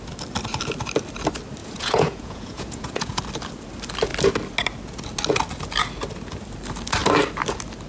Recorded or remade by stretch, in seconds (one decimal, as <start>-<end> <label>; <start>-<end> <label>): 0.0-1.6 recorded; 1.6-3.2 remade; 3.2-7.9 recorded